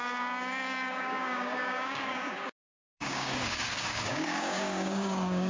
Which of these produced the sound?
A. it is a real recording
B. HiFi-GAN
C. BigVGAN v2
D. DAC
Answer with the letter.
D